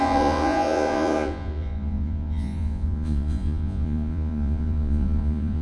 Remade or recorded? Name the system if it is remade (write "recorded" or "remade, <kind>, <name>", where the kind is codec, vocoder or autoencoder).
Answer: remade, vocoder, Vocos